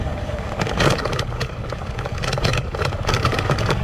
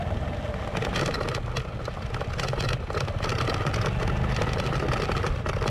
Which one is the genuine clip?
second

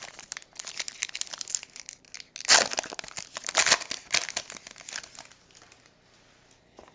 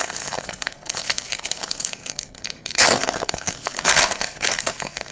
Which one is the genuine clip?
first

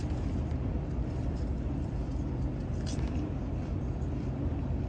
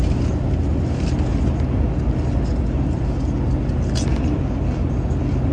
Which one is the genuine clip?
second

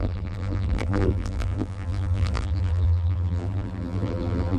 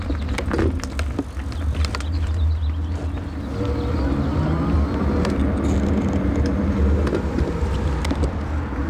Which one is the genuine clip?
second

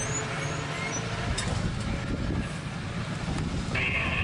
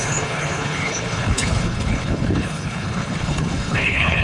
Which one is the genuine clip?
first